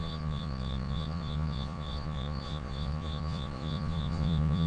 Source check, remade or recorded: remade